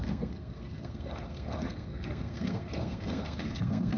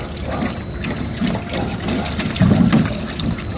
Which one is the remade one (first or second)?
first